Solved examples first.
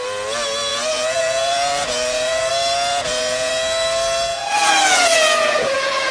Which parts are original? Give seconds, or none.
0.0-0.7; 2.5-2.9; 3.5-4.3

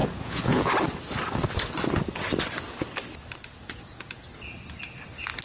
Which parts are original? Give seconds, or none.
0.7-3.6; 4.2-5.4

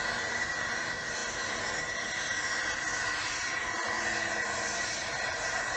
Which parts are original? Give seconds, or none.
0.0-5.8

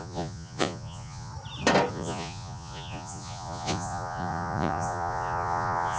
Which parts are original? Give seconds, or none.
1.3-1.9

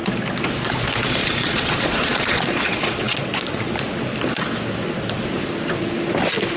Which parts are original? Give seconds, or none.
0.0-1.2; 3.7-6.6